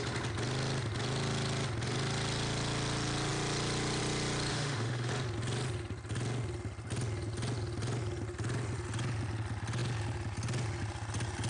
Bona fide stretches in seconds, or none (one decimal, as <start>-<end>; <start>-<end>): 0.0-4.5; 5.1-11.5